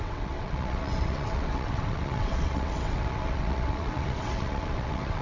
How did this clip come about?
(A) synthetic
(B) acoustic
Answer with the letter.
A